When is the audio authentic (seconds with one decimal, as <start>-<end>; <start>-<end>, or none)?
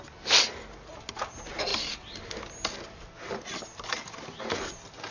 0.0-5.1